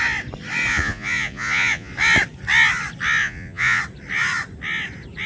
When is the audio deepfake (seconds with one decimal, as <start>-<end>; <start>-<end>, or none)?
0.7-1.9; 3.2-3.8